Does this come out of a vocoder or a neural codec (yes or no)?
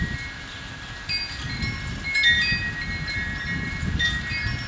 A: no